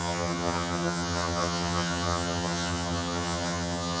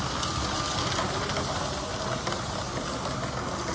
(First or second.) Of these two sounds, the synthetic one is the first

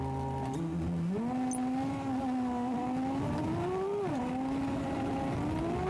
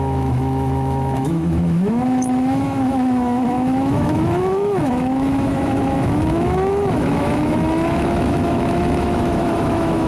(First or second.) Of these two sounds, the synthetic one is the second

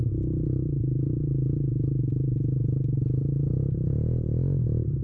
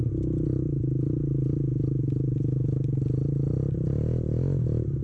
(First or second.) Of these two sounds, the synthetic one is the first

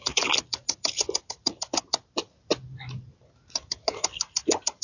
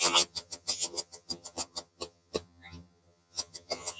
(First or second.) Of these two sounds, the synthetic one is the second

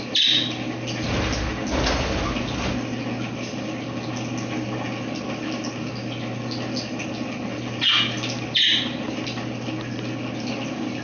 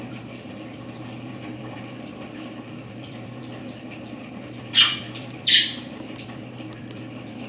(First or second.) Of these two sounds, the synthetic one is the second